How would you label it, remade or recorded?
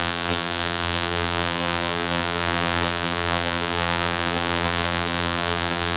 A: remade